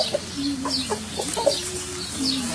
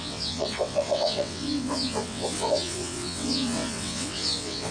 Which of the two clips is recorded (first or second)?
first